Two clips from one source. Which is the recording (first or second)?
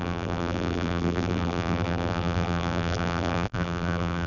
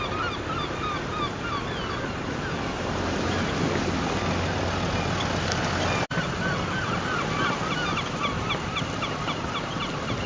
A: second